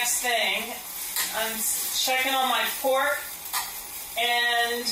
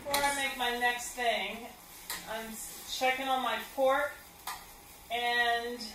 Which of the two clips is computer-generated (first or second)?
first